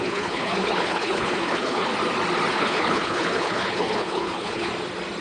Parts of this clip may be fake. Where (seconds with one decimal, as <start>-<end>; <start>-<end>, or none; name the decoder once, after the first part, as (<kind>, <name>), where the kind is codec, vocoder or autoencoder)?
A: 0.0-1.9 (codec, HILCodec); 2.5-4.7